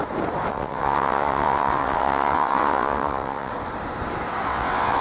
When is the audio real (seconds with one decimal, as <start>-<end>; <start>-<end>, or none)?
0.0-0.5; 3.5-4.5